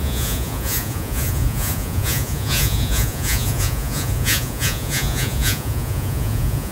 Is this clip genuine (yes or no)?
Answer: no